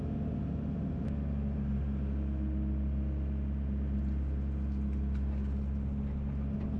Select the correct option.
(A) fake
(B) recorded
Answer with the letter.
B